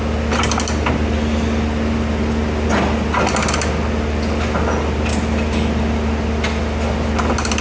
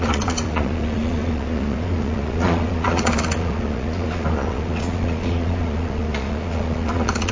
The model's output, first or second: second